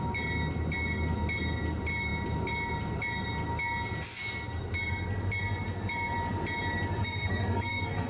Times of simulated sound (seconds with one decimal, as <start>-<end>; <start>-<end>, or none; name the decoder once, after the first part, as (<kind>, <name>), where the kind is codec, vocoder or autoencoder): 7.0-8.1 (codec, SNAC)